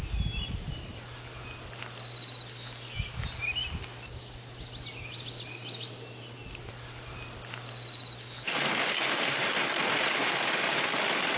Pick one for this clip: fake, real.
real